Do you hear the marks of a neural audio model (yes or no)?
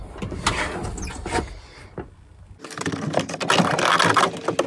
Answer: no